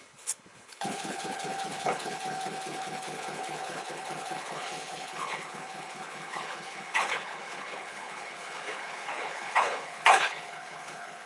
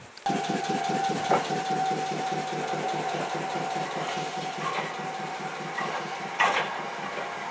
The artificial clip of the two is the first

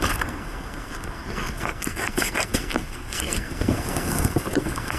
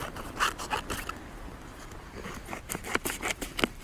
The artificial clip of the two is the first